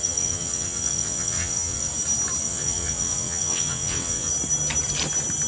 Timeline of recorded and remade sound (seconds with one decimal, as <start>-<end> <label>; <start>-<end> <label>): 0.0-1.9 remade; 1.9-2.4 recorded; 2.4-4.3 remade; 4.3-5.5 recorded